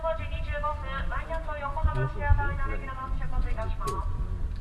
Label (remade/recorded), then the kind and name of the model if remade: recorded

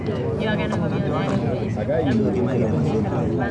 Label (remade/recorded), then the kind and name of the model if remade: recorded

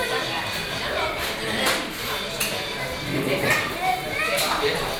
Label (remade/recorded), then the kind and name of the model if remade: recorded